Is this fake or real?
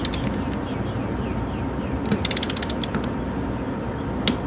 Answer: real